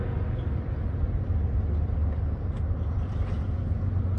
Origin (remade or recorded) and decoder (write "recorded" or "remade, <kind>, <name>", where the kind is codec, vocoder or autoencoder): recorded